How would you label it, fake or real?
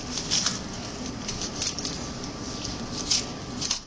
real